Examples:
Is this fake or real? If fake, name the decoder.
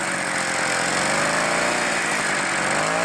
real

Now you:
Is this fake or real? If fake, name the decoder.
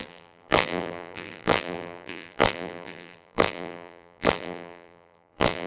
fake, vocoder, BigVGAN v2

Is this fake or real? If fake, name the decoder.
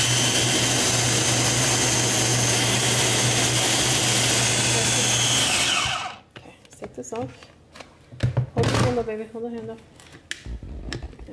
real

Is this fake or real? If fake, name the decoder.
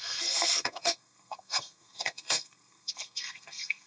fake, codec, SNAC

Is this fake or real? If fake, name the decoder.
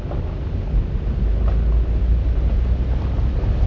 real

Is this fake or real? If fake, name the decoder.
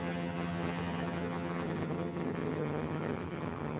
fake, vocoder, HiFi-GAN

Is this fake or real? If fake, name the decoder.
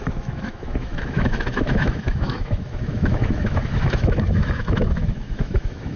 fake, autoencoder, DAC-VAE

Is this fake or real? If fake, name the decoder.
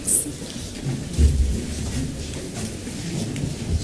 real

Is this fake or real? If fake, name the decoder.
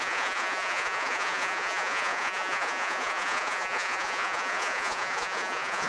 fake, vocoder, Vocos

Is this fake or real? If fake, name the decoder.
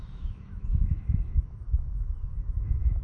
fake, autoencoder, DAC-VAE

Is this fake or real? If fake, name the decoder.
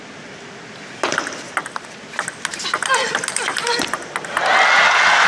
real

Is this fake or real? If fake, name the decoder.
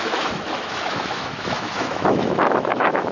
fake, autoencoder, DAC-VAE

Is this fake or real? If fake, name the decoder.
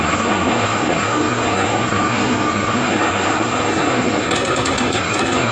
fake, codec, SNAC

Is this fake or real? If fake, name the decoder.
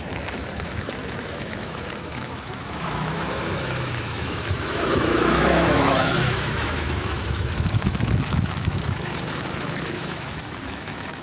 fake, autoencoder, DAC-VAE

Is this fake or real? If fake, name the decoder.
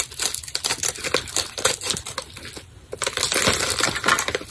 real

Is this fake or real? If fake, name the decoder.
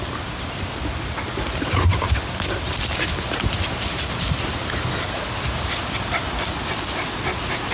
real